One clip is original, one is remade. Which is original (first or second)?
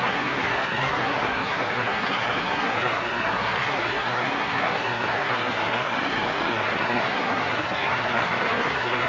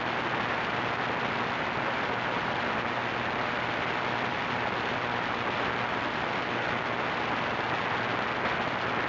second